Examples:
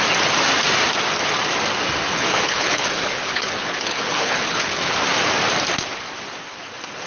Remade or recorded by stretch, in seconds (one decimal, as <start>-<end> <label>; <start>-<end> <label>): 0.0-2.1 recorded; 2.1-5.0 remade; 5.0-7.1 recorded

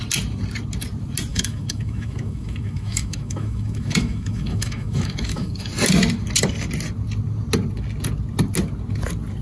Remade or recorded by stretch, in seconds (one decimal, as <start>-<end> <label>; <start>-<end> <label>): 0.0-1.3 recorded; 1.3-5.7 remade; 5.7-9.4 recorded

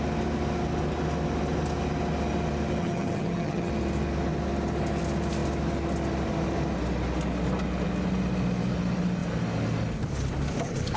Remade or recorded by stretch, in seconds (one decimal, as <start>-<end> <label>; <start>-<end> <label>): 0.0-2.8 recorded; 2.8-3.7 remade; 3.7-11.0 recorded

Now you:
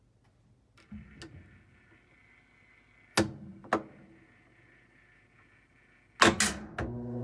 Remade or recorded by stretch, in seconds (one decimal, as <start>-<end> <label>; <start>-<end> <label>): 0.0-7.2 recorded

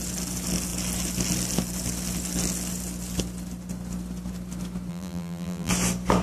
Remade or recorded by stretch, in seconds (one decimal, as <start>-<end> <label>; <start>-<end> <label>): 0.0-4.9 recorded; 4.9-5.7 remade; 5.7-6.2 recorded

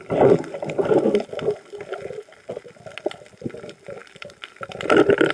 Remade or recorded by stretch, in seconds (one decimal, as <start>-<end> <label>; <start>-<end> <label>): 0.0-5.3 recorded

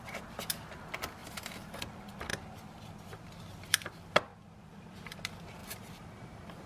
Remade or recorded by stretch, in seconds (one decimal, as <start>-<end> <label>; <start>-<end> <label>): 0.0-1.2 recorded; 1.2-1.8 remade; 1.8-5.6 recorded; 5.6-6.7 remade